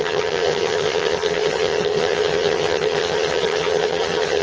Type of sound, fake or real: fake